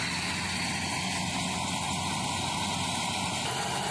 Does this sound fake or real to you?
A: real